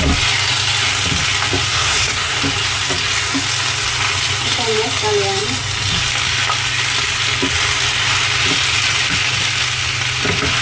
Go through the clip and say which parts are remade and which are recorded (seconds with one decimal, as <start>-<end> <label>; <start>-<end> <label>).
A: 0.0-1.7 recorded; 1.7-2.4 remade; 2.4-10.6 recorded

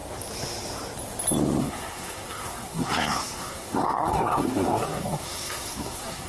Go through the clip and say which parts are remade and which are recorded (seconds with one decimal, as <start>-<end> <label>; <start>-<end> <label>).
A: 0.0-1.6 recorded; 1.6-6.3 remade

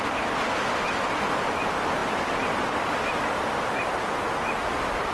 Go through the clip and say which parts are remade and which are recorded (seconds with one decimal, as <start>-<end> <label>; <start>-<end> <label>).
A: 0.0-5.1 recorded

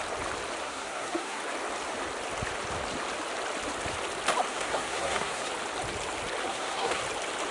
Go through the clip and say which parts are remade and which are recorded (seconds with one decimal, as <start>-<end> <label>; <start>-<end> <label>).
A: 0.0-0.6 recorded; 0.6-1.4 remade; 1.4-4.5 recorded; 4.5-5.5 remade; 5.5-6.5 recorded; 6.5-7.0 remade; 7.0-7.5 recorded

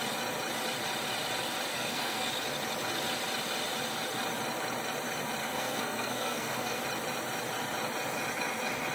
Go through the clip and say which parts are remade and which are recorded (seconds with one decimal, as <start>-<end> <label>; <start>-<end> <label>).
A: 0.0-1.7 recorded; 1.7-2.3 remade; 2.3-5.4 recorded; 5.4-6.8 remade; 6.8-8.9 recorded